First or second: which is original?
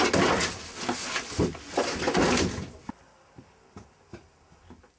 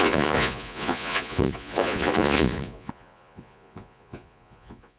first